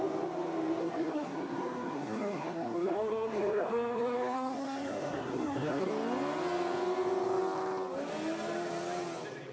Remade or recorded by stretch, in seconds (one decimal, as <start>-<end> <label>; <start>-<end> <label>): 0.0-0.8 recorded; 0.8-5.9 remade; 5.9-9.5 recorded